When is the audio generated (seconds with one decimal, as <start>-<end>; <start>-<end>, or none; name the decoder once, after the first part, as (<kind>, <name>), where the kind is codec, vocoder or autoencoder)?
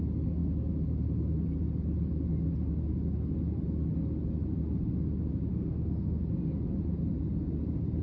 5.5-6.2 (codec, SNAC)